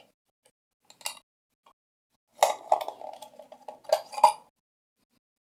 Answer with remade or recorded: recorded